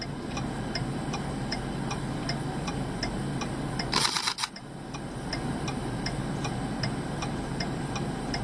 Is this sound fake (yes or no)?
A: no